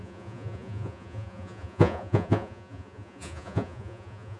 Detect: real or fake fake